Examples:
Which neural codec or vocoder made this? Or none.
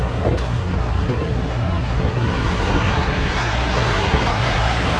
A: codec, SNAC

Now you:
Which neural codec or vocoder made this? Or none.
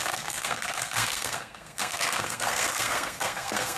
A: codec, SNAC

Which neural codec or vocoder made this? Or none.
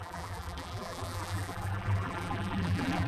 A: vocoder, BigVGAN v2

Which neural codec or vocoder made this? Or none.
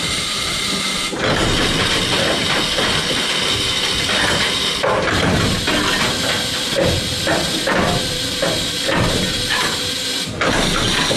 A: none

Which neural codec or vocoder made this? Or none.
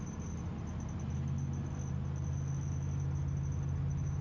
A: none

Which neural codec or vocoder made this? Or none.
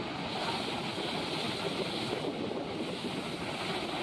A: none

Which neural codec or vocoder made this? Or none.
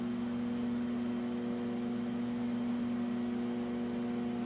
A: none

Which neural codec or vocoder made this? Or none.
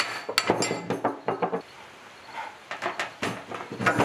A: none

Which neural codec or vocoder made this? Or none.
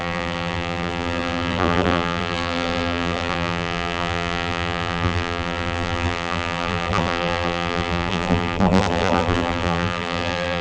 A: vocoder, BigVGAN v2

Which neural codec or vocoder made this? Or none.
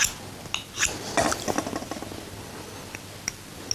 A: none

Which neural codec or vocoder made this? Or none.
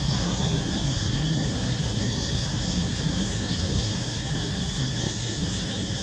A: codec, SNAC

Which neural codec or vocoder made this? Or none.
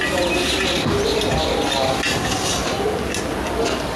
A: none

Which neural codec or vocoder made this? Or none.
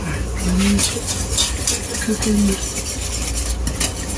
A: none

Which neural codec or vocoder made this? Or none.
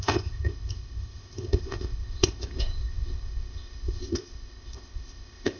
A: codec, ZipCodec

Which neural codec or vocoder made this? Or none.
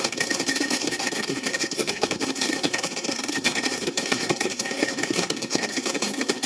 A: codec, SNAC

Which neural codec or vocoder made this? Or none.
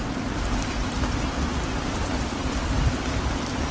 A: none